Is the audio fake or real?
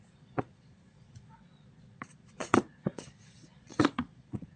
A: fake